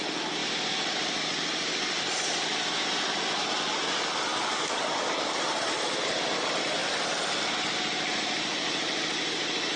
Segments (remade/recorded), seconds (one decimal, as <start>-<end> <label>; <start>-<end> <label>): 0.0-4.3 recorded; 4.3-5.3 remade; 5.3-9.8 recorded